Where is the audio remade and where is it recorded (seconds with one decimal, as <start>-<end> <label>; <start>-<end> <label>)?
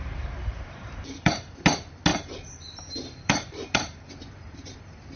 0.0-1.6 remade; 1.6-2.1 recorded; 2.1-4.1 remade; 4.1-5.2 recorded